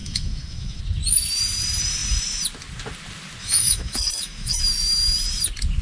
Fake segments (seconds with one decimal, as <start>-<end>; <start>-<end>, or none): 0.0-0.8; 3.4-4.6